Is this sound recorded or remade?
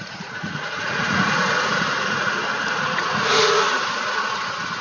remade